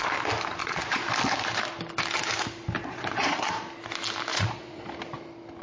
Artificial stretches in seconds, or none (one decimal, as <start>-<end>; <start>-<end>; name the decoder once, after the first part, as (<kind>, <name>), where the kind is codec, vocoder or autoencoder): 0.6-1.1 (vocoder, Vocos); 2.8-3.6; 4.3-4.9

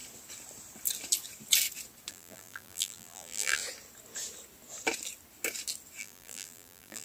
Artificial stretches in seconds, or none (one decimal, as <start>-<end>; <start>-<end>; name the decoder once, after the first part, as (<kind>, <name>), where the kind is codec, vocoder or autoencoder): 2.1-3.6 (vocoder, BigVGAN v2); 6.0-7.0

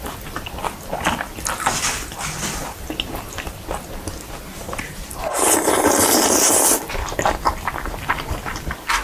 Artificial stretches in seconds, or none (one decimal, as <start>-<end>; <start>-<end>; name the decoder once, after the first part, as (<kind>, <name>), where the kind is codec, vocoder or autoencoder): 4.6-5.1 (vocoder, BigVGAN v2)

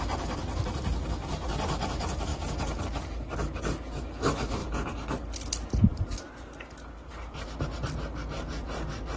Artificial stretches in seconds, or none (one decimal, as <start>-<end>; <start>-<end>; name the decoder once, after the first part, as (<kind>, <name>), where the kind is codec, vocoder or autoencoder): 2.3-2.8 (vocoder, Vocos)

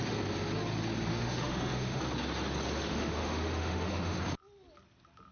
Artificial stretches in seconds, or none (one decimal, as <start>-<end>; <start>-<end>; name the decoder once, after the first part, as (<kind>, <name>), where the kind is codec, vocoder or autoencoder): 1.1-2.0 (autoencoder, DAC-VAE); 2.9-4.2

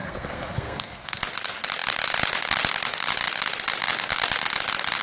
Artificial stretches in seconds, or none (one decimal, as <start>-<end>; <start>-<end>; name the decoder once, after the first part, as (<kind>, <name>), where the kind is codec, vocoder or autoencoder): 0.0-1.2 (codec, SNAC)

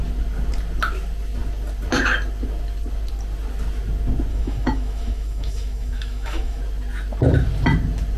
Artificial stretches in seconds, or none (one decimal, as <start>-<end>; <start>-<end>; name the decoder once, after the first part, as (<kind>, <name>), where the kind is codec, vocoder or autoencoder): 4.3-6.6 (autoencoder, DAC-VAE)

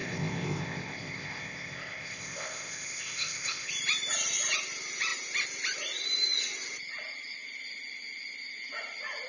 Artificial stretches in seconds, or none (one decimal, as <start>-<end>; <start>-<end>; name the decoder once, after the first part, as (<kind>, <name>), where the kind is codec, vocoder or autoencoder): 0.0-3.7 (codec, ZipCodec)